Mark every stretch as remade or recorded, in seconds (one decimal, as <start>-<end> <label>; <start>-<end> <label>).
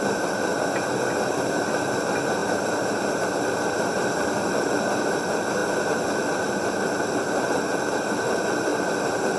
0.0-9.4 recorded